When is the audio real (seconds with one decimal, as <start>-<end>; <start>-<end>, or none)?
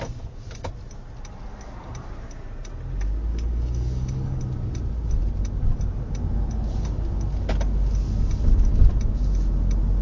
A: 0.0-3.3; 4.4-10.0